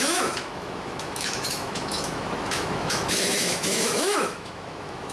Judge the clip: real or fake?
fake